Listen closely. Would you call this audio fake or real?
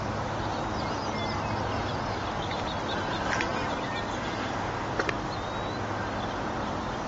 real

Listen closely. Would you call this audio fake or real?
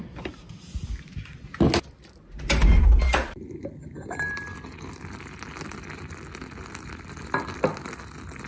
real